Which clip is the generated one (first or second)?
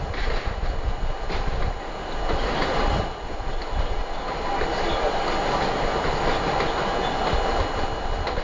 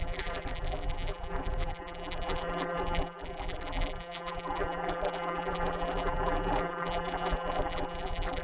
second